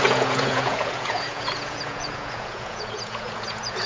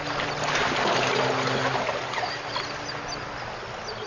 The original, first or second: second